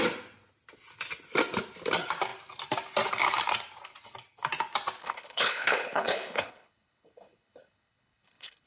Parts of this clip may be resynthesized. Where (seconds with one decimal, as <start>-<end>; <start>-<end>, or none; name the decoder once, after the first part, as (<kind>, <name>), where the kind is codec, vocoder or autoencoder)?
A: 5.0-8.7 (codec, HILCodec)